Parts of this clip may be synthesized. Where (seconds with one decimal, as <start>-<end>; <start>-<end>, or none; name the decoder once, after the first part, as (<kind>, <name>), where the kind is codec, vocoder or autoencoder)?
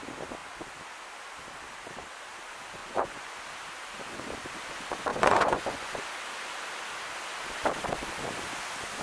2.8-3.3 (vocoder, Vocos); 5.1-6.0